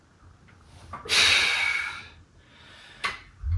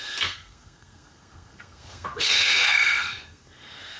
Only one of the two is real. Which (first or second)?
first